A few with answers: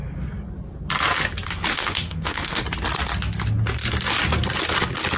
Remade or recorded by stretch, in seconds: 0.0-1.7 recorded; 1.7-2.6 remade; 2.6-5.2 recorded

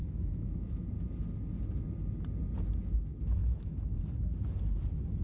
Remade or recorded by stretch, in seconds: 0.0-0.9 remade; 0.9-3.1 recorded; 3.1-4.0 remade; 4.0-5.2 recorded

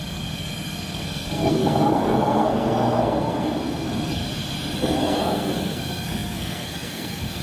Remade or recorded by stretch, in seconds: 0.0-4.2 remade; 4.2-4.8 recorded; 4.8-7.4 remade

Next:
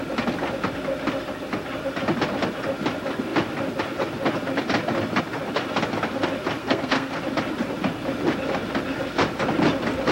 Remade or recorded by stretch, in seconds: 0.0-6.6 recorded; 6.6-7.2 remade; 7.2-10.1 recorded

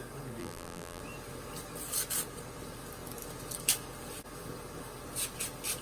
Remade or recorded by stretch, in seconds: 0.0-0.4 recorded; 0.4-1.0 remade; 1.0-5.8 recorded